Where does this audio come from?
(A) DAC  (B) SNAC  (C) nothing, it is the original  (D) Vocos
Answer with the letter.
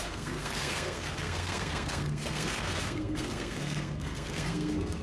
B